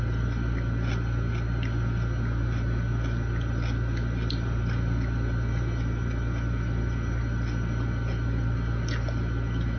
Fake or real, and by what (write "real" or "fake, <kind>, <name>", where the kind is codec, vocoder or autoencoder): real